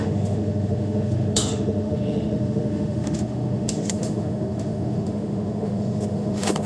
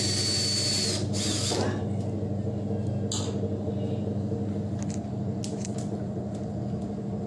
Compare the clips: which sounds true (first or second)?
second